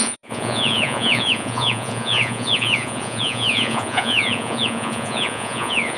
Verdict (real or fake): fake